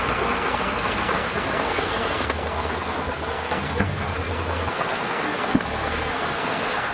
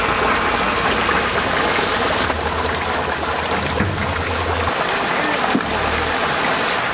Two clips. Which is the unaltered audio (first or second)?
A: second